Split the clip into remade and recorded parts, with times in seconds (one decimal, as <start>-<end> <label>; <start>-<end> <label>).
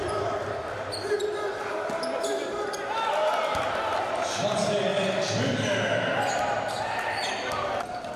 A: 0.0-8.2 recorded